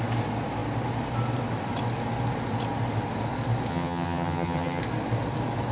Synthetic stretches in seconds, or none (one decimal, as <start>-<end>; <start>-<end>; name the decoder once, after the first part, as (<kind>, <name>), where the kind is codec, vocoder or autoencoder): 3.7-4.8 (vocoder, HiFi-GAN)